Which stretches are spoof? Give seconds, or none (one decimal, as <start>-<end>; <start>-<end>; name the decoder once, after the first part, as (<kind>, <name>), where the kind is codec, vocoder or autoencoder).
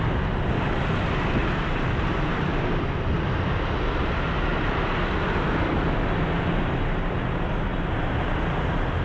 1.4-2.3 (vocoder, BigVGAN v2); 4.5-5.0; 7.7-8.2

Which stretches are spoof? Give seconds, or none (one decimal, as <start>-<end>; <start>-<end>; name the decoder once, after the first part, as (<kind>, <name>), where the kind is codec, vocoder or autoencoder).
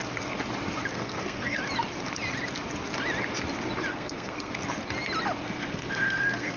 0.9-1.6 (codec, SNAC); 3.9-4.5; 5.4-6.6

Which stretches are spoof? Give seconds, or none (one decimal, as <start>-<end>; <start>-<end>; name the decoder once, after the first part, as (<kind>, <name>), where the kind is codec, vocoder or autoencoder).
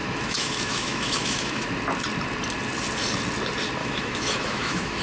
0.0-1.7 (autoencoder, DAC-VAE); 3.8-5.0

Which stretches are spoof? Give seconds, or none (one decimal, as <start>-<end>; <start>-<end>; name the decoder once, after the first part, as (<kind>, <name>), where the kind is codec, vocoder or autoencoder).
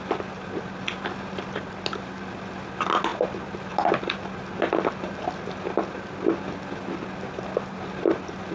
none